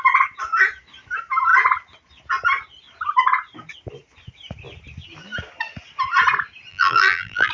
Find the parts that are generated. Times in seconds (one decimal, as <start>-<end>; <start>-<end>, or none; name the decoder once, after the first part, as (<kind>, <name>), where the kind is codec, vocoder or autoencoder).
6.7-7.5 (vocoder, BigVGAN v2)